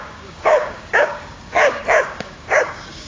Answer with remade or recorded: remade